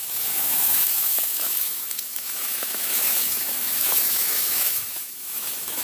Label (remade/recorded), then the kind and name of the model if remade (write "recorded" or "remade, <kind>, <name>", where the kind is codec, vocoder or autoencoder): remade, autoencoder, DAC-VAE